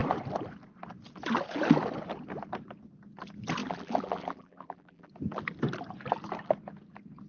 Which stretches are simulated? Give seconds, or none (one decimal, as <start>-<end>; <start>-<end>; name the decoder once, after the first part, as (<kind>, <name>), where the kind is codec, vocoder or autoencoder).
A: 3.6-5.1 (vocoder, BigVGAN v2)